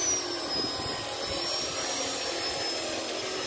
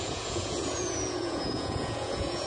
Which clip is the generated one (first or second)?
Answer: second